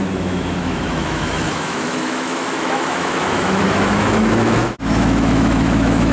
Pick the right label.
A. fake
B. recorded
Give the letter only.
A